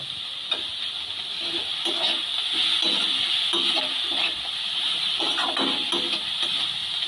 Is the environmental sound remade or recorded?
recorded